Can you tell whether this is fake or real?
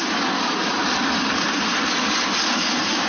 fake